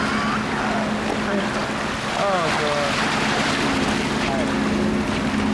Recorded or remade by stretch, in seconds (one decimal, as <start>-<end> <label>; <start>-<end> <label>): 0.0-5.5 recorded